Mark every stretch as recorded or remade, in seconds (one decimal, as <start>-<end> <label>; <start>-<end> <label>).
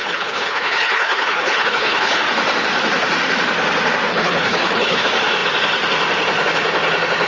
0.0-2.2 remade; 2.2-4.1 recorded; 4.1-5.0 remade; 5.0-7.3 recorded